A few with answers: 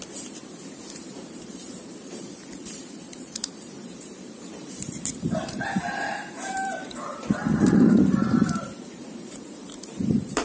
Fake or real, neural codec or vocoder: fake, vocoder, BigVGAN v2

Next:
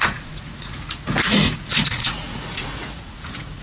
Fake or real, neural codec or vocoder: fake, vocoder, Vocos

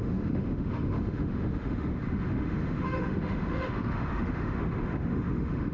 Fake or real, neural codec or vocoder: fake, autoencoder, DAC-VAE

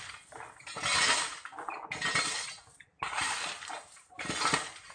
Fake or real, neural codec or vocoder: real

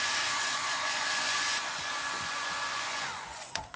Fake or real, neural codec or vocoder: fake, vocoder, Vocos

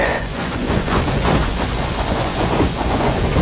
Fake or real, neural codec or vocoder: fake, vocoder, Vocos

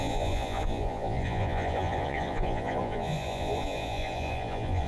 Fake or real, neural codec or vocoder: fake, vocoder, Vocos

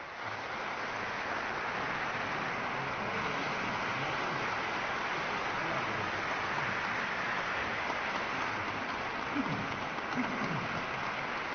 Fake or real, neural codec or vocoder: real